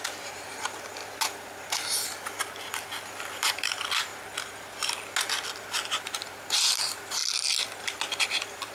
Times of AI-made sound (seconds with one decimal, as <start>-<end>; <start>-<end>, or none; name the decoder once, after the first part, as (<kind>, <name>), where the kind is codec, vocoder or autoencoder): 0.0-1.0 (vocoder, BigVGAN v2); 3.3-4.1; 6.0-7.2; 8.1-8.7